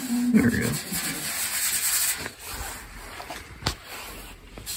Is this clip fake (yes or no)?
no